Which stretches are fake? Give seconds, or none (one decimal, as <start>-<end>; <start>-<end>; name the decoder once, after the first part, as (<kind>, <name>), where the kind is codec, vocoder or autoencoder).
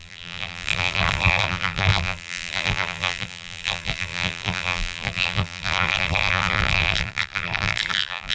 0.0-8.3 (vocoder, BigVGAN v2)